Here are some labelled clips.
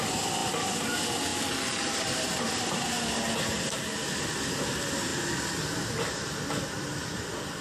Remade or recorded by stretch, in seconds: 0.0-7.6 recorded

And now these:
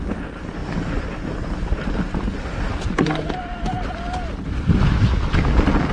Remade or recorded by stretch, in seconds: 0.0-5.9 recorded

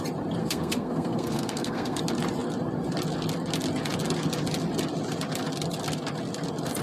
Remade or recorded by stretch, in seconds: 0.0-0.4 recorded; 0.4-2.0 remade; 2.0-6.8 recorded

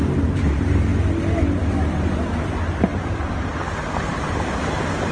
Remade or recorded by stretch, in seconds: 0.0-0.9 remade; 0.9-2.5 recorded; 2.5-3.5 remade; 3.5-4.0 recorded; 4.0-5.1 remade

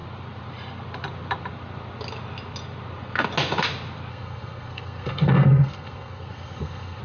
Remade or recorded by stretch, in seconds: 0.0-4.1 recorded; 4.1-7.0 remade